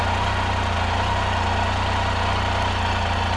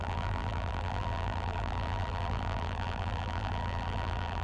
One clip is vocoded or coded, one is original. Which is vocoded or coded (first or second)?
second